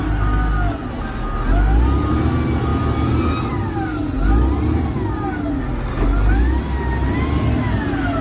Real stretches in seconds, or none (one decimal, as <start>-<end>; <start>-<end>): 0.0-8.2